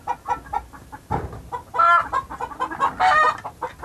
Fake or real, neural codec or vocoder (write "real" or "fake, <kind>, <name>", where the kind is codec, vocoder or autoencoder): real